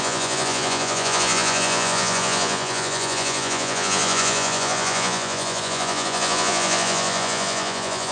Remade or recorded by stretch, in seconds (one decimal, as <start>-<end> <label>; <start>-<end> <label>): 0.0-8.1 remade